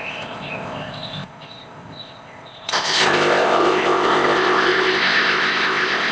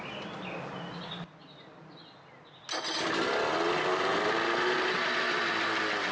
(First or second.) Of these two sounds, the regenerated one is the first